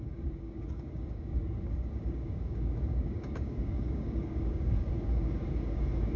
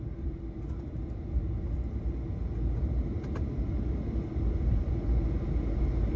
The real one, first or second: second